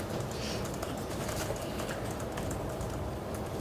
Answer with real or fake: real